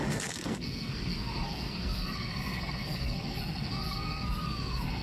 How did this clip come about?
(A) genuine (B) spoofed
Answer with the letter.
B